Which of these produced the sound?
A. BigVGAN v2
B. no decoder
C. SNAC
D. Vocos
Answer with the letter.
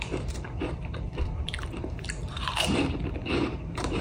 A